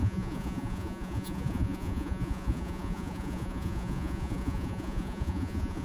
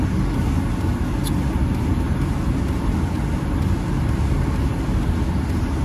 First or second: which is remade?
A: first